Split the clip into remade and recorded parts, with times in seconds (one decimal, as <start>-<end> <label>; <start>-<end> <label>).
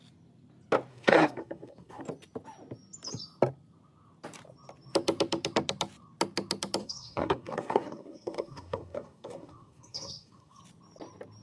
0.0-0.9 recorded; 0.9-2.0 remade; 2.0-6.8 recorded; 6.8-10.6 remade; 10.6-11.4 recorded